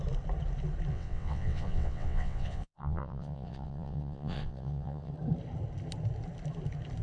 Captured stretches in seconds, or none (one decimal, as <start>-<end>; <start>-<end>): 0.0-0.9; 5.1-7.0